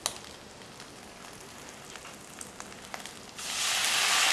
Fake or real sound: real